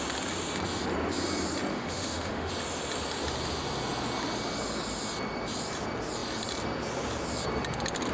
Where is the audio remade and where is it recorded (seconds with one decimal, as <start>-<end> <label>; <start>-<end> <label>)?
0.0-1.7 recorded; 1.7-2.5 remade; 2.5-8.1 recorded